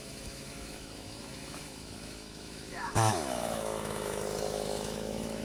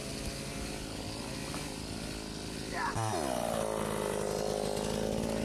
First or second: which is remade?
first